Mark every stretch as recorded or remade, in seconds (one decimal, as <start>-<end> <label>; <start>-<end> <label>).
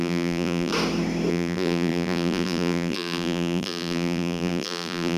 0.0-0.7 remade; 0.7-1.3 recorded; 1.3-5.2 remade